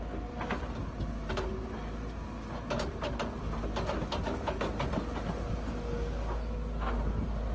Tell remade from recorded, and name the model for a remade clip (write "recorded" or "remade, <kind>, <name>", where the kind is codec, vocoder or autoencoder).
recorded